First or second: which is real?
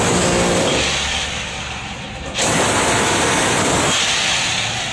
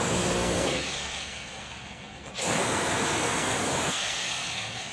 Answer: first